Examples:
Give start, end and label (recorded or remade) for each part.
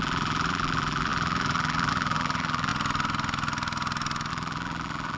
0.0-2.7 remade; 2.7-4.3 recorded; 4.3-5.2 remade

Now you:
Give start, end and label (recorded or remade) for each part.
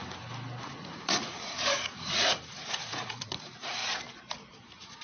0.0-0.7 recorded; 0.7-3.8 remade; 3.8-4.5 recorded; 4.5-5.0 remade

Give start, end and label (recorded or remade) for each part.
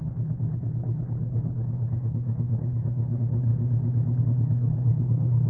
0.0-3.5 remade; 3.5-4.2 recorded; 4.2-5.5 remade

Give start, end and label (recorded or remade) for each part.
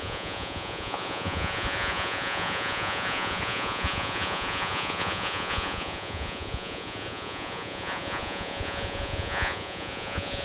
0.0-10.4 remade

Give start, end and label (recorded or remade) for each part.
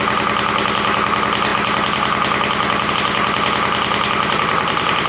0.0-5.1 recorded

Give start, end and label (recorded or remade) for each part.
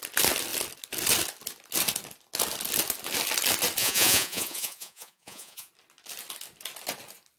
0.0-3.8 recorded; 3.8-5.7 remade; 5.7-7.4 recorded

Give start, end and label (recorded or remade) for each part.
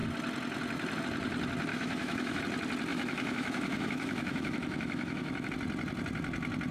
0.0-1.7 recorded; 1.7-2.4 remade; 2.4-2.9 recorded; 2.9-5.5 remade; 5.5-6.7 recorded